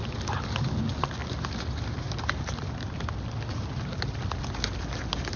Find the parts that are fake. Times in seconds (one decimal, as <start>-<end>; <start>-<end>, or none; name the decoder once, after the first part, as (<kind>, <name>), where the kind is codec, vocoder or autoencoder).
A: none